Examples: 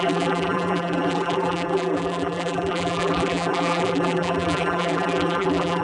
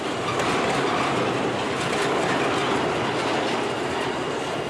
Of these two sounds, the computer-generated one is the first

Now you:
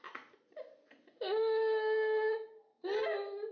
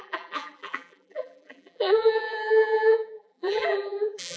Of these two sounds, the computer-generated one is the second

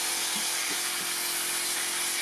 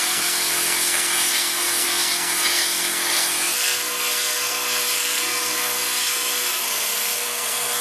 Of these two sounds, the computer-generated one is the second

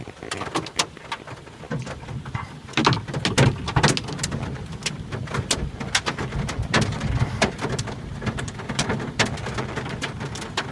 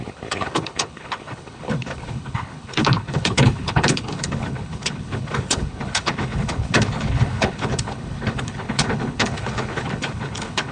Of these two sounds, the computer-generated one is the second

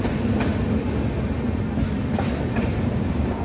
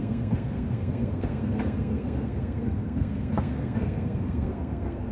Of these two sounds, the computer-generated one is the second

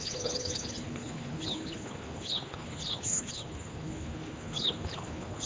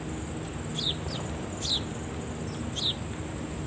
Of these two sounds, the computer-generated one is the first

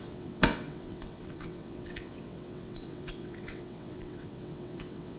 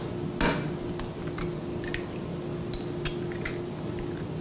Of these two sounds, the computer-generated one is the first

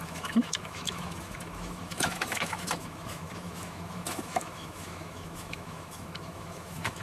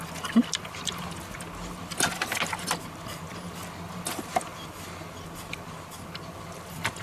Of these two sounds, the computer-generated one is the first